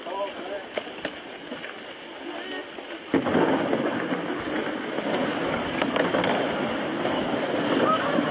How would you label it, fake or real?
real